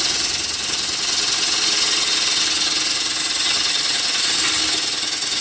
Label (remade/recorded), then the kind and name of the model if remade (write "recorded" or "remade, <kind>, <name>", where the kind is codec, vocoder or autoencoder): recorded